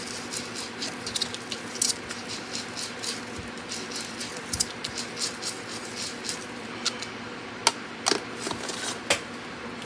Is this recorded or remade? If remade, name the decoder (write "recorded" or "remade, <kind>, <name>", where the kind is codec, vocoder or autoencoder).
recorded